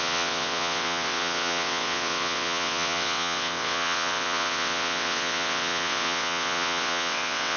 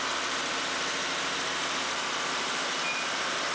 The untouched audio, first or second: second